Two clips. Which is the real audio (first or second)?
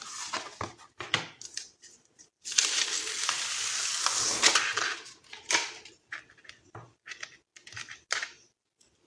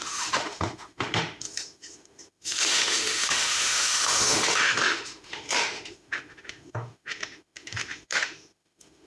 first